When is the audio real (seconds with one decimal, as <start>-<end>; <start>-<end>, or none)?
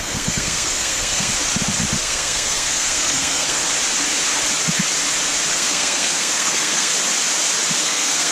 1.3-2.0; 3.6-5.5; 6.9-7.8